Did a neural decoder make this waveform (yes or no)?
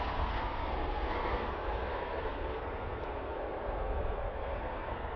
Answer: yes